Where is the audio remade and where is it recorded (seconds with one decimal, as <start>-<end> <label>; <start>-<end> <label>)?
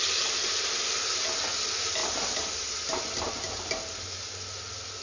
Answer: 0.0-5.0 recorded